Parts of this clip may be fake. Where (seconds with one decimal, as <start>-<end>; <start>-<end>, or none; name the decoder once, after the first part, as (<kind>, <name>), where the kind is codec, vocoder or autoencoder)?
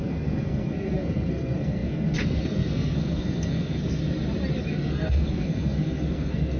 0.0-4.0 (codec, SNAC); 4.7-6.6